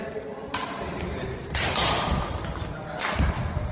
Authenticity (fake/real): real